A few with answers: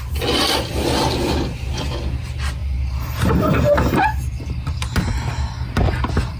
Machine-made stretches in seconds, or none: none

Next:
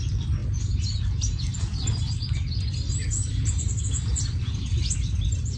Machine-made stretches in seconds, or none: none

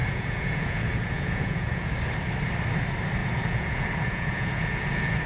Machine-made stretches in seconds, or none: 0.0-1.9 (vocoder, Vocos); 3.2-5.3

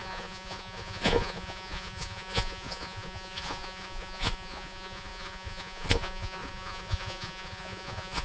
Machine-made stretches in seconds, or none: 0.0-8.2 (vocoder, Vocos)

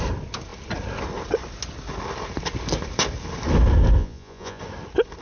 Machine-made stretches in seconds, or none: 4.0-4.6 (vocoder, Vocos)

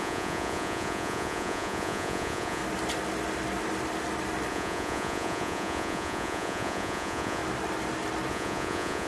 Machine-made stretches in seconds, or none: 0.0-2.6 (vocoder, Vocos); 4.5-7.4; 8.3-9.1

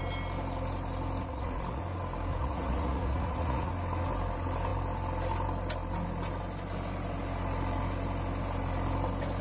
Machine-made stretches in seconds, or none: 1.2-1.8 (vocoder, Vocos); 2.3-3.7